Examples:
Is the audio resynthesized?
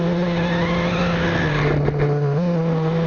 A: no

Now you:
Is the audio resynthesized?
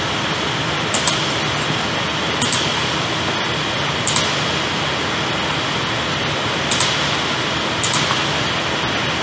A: no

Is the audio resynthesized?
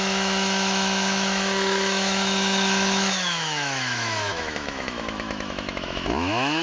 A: yes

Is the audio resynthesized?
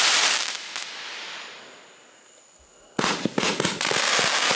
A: no